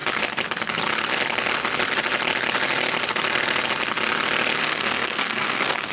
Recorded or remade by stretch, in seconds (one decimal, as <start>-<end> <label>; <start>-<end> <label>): 0.0-4.6 recorded; 4.6-5.9 remade